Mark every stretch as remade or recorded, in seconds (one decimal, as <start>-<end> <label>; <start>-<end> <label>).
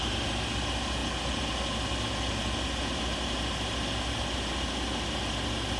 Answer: 0.0-5.8 recorded